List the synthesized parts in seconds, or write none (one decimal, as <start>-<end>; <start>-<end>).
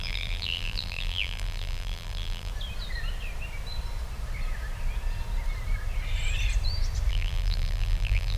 0.0-2.5; 7.1-8.4